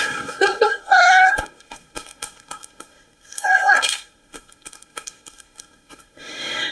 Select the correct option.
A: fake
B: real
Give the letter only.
A